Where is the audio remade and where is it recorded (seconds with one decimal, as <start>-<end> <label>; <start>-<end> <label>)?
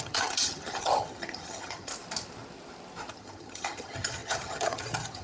0.0-1.9 remade; 1.9-3.1 recorded; 3.1-5.2 remade